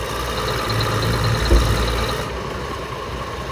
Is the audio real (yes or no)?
yes